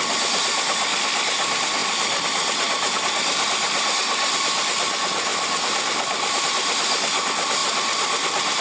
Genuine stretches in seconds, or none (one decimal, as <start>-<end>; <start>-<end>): 0.0-5.3; 6.4-7.6